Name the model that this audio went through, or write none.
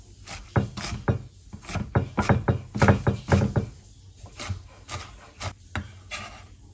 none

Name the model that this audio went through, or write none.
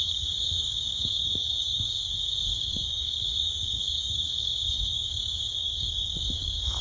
codec, DAC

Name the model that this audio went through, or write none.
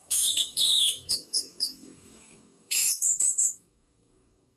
codec, DAC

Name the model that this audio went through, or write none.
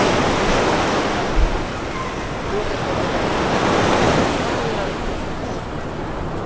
none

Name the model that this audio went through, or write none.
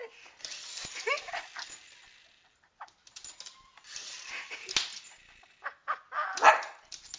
none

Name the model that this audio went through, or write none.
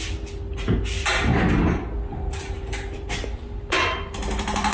none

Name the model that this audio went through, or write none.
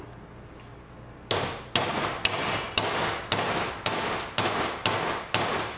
none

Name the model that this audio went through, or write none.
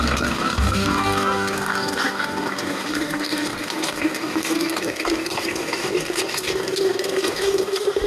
codec, DAC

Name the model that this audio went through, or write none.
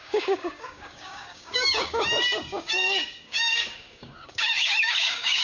codec, DAC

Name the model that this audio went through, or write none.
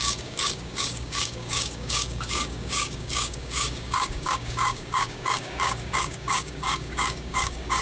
codec, DAC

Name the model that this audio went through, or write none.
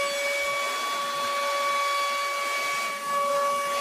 none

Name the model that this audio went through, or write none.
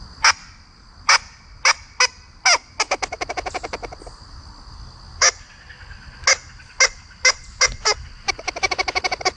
none